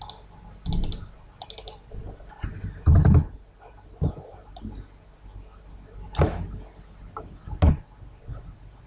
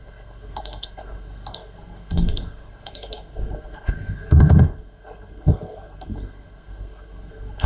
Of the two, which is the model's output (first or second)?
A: second